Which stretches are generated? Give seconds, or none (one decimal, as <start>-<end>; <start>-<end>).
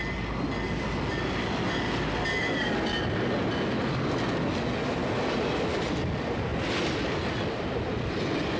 none